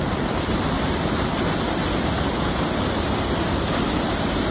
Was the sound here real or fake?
real